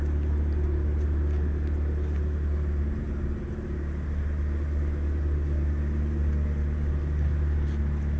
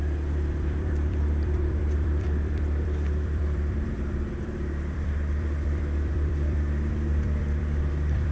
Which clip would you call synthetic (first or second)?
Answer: second